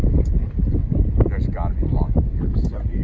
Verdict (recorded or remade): recorded